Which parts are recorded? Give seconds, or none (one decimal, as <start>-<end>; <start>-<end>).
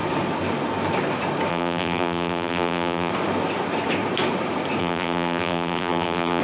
0.0-1.5; 3.1-4.8